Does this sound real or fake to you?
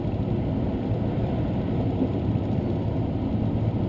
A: real